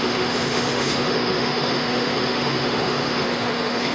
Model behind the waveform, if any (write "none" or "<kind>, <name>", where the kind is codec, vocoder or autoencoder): autoencoder, DAC-VAE